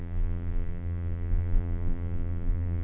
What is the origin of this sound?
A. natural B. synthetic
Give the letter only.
B